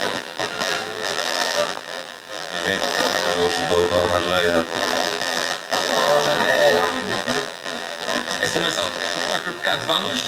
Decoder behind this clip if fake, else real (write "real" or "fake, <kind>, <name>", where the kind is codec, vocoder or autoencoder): fake, vocoder, BigVGAN v2